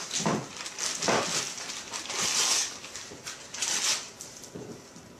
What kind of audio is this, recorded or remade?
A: recorded